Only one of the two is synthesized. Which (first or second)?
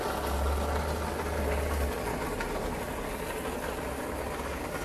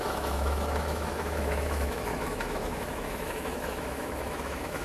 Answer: second